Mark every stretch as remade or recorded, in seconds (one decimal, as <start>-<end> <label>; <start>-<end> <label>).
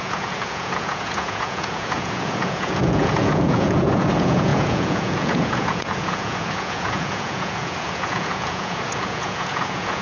0.0-10.0 remade